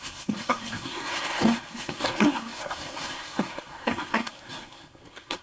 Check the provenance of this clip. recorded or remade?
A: remade